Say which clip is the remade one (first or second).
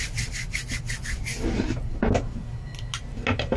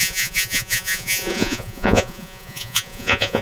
second